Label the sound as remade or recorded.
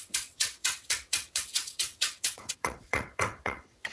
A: remade